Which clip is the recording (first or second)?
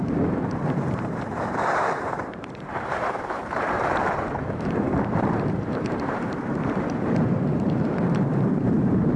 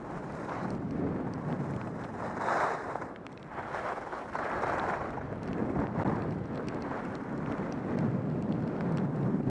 second